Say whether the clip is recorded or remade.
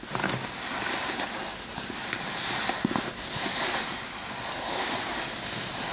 recorded